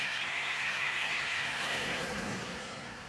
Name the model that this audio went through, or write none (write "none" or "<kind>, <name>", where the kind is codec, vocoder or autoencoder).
codec, SNAC